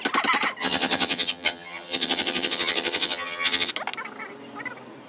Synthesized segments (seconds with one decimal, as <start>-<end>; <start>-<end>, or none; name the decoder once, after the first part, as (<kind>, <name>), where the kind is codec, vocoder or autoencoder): 0.6-3.7 (vocoder, HiFi-GAN)